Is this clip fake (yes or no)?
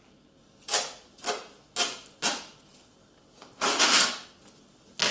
no